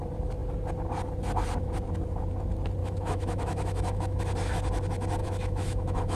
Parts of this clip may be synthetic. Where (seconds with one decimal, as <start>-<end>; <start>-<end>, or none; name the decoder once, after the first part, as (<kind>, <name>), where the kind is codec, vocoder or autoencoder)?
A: 2.8-4.2 (autoencoder, DAC-VAE); 5.2-6.2